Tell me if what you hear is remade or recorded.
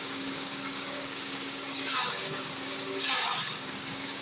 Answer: remade